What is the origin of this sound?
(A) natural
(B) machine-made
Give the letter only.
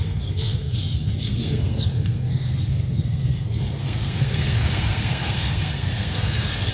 B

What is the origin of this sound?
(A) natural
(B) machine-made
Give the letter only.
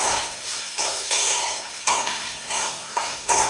B